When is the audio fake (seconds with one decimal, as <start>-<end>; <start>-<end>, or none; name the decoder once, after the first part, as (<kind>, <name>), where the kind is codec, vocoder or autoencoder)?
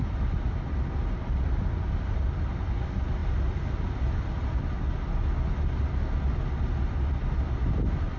none